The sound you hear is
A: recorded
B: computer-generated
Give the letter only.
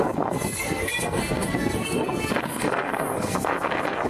B